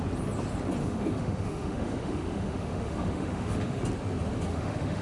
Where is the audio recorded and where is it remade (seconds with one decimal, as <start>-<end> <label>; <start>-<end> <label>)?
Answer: 0.0-0.8 recorded; 0.8-3.8 remade; 3.8-4.5 recorded; 4.5-5.0 remade